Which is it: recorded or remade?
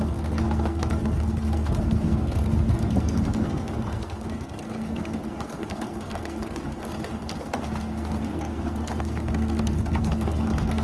remade